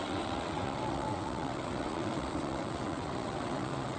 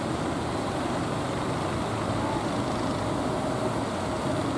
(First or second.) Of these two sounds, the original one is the second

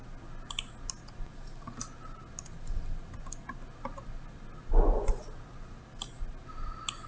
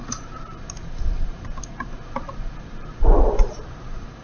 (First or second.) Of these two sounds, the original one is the first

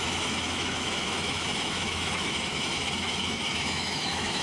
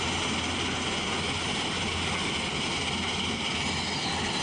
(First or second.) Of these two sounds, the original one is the second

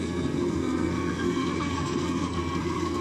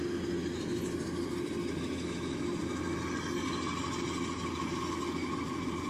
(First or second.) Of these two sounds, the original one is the second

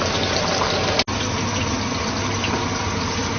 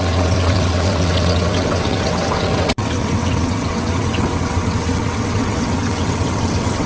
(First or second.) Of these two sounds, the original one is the first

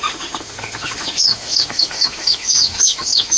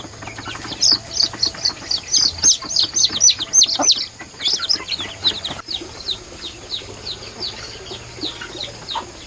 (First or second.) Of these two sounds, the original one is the second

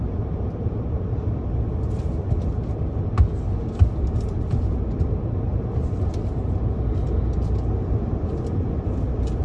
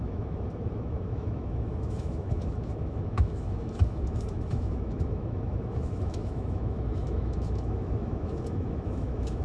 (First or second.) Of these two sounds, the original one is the first